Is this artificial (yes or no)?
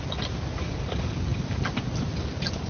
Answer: no